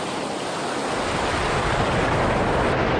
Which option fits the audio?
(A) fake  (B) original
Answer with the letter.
B